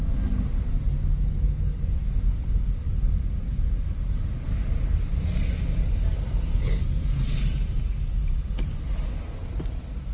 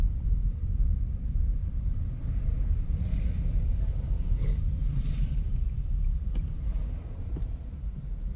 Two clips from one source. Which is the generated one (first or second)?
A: second